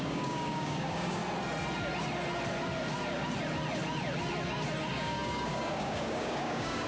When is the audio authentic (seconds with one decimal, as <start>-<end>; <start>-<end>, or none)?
1.2-4.9